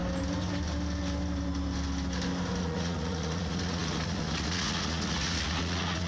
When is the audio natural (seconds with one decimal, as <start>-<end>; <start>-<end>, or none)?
0.0-2.6